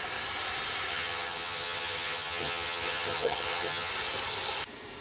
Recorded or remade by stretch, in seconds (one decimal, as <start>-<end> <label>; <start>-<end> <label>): 0.0-0.9 recorded; 0.9-3.9 remade; 3.9-5.0 recorded